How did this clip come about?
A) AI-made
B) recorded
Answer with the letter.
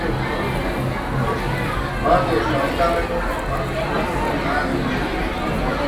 B